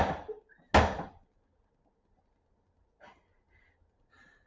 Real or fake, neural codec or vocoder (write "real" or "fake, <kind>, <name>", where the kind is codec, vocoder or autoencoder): real